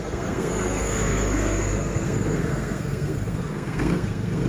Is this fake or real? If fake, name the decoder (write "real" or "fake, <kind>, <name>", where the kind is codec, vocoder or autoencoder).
fake, codec, SNAC